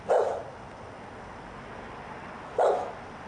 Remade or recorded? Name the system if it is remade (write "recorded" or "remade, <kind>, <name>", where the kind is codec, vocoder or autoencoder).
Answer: recorded